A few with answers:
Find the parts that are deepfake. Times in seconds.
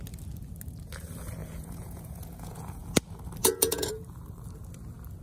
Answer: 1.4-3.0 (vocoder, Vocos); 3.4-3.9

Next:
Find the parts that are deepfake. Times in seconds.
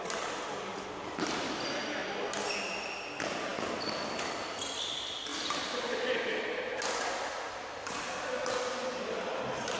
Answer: none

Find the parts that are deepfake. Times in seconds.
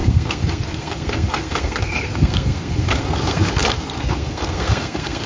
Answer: 0.0-5.3 (codec, SNAC)